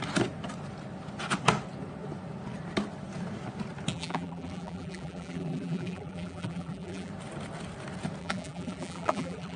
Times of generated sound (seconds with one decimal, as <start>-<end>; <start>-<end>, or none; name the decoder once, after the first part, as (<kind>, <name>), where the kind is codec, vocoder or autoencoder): 3.9-7.1 (vocoder, BigVGAN v2); 8.2-9.6